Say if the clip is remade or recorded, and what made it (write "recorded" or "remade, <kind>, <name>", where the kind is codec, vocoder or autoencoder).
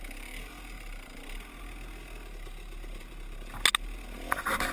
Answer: recorded